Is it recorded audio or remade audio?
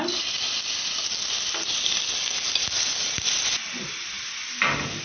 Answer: recorded